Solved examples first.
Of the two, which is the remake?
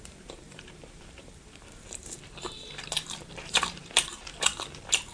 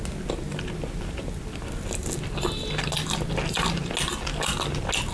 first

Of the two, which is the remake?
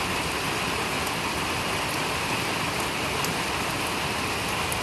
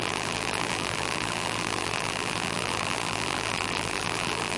second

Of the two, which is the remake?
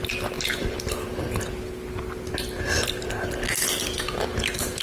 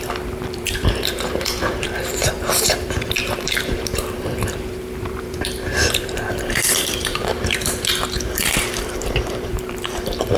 second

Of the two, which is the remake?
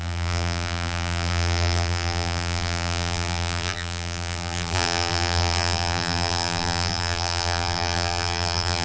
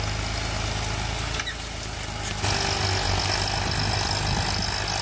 first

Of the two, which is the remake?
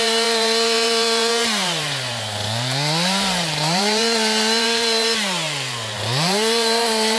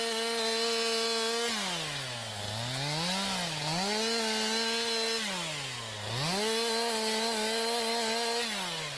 first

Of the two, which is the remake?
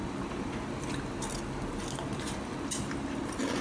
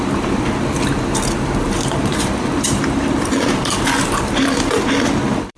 second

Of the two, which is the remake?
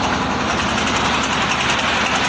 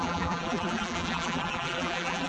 second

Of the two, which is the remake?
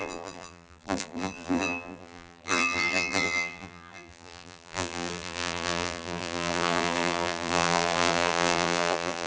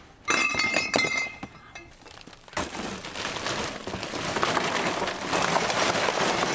first